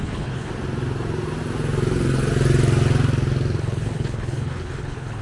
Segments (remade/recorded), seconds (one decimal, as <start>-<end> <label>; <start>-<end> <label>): 0.0-0.5 remade; 0.5-3.6 recorded; 3.6-5.2 remade